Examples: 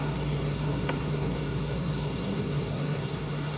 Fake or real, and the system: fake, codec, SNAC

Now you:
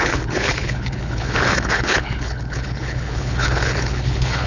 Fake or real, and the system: fake, codec, HILCodec